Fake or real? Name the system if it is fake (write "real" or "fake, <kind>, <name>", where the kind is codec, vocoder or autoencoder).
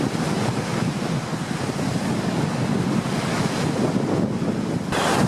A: real